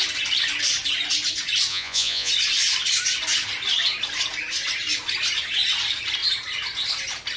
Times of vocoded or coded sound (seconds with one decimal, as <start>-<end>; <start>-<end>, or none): 1.7-2.3